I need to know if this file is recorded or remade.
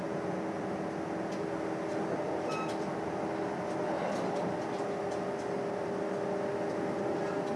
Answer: recorded